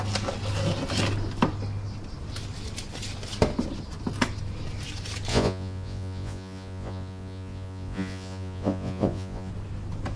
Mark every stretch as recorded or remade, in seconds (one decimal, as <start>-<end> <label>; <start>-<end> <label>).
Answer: 0.0-5.3 recorded; 5.3-9.5 remade; 9.5-10.2 recorded